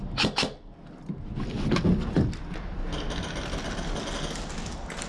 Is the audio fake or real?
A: real